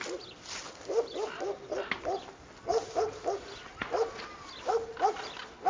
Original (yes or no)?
yes